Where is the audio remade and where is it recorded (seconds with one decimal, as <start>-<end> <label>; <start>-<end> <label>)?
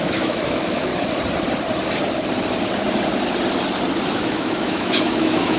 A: 0.0-0.9 remade; 0.9-4.1 recorded; 4.1-5.6 remade